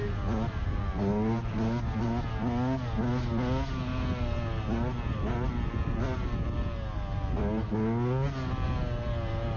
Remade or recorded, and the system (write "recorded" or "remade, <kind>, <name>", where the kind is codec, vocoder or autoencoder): recorded